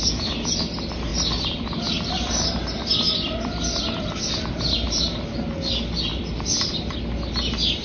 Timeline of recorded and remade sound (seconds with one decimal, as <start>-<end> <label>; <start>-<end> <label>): 0.0-1.1 recorded; 1.1-3.8 remade; 3.8-6.1 recorded; 6.1-6.7 remade; 6.7-7.8 recorded